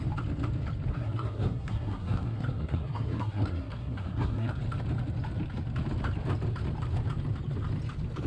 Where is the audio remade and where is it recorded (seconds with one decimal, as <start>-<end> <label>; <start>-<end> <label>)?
0.0-0.9 recorded; 0.9-4.6 remade; 4.6-8.3 recorded